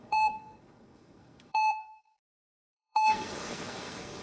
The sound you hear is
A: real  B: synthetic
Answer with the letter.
B